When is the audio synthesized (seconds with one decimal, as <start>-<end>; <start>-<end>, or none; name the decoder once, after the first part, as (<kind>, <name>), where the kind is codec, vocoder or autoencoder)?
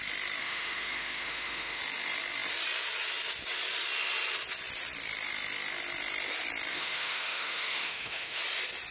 0.4-1.8 (autoencoder, DAC-VAE); 6.7-8.4